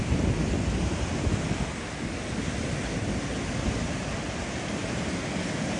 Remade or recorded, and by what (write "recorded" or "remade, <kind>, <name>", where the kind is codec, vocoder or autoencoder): recorded